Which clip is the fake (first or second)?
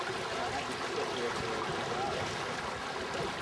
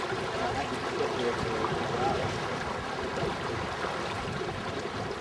second